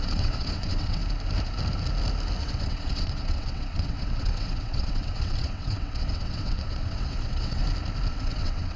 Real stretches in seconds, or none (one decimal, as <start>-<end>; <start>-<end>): 1.0-2.4; 7.6-8.1